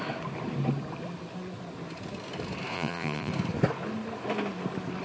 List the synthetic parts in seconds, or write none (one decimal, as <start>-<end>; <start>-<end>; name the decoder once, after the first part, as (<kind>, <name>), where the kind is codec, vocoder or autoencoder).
2.7-3.3 (vocoder, Vocos)

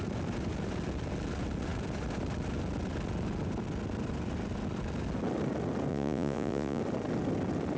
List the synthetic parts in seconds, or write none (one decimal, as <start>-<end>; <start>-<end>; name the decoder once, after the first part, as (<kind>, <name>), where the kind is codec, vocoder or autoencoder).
5.9-6.8 (vocoder, Vocos)

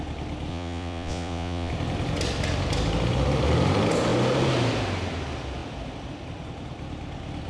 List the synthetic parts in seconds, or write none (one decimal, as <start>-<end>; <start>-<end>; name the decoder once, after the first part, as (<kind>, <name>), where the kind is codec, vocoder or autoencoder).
0.5-1.7 (vocoder, Vocos)

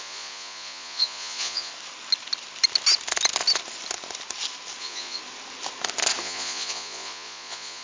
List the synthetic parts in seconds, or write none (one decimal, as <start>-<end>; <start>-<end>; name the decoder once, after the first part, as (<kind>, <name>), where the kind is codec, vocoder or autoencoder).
0.0-1.7 (vocoder, Vocos); 4.8-5.2; 6.2-7.8

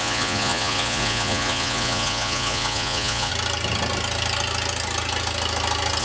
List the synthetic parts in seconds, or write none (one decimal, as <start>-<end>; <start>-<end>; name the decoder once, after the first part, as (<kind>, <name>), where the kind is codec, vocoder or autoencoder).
0.0-3.3 (vocoder, Vocos)

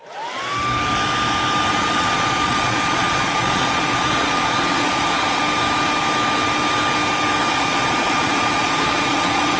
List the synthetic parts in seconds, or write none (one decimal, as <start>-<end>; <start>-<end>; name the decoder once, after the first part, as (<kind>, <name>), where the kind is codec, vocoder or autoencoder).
1.7-5.4 (vocoder, Vocos); 7.4-9.6

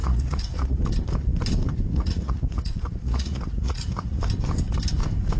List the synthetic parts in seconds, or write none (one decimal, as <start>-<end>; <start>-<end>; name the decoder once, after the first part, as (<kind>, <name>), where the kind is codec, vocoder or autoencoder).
0.0-0.8 (vocoder, Vocos); 1.9-4.2